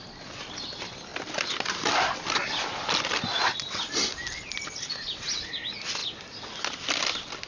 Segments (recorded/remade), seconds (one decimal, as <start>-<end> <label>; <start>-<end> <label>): 0.0-1.1 recorded; 1.1-4.7 remade; 4.7-7.5 recorded